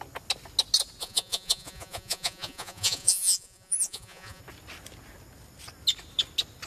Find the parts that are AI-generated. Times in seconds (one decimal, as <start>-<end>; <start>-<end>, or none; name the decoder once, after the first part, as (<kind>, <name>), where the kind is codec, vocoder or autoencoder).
1.0-4.4 (vocoder, Vocos)